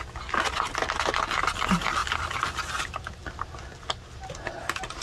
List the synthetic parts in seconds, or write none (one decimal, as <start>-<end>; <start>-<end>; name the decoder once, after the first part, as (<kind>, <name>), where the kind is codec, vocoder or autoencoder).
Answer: none